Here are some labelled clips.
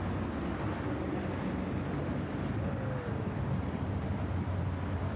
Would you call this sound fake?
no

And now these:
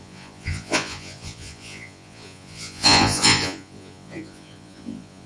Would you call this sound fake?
yes